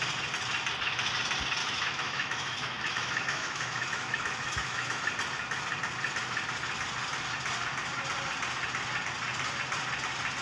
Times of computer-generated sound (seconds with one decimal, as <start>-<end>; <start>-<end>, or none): 1.6-5.0